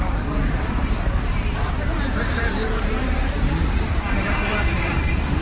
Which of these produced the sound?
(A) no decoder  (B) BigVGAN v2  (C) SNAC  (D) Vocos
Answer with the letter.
B